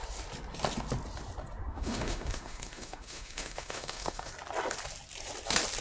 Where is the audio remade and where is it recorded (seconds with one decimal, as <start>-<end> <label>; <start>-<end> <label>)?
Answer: 0.0-1.7 recorded; 1.7-4.3 remade; 4.3-5.8 recorded